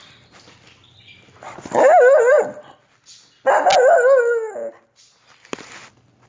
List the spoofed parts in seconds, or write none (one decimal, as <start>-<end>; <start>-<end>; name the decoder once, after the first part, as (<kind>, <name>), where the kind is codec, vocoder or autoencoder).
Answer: none